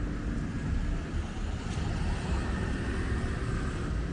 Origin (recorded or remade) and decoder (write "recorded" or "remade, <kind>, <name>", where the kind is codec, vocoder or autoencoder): recorded